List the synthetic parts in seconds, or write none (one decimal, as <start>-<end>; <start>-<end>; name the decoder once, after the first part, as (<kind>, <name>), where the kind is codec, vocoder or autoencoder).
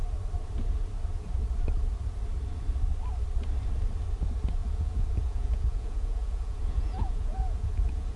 4.6-8.2 (vocoder, Vocos)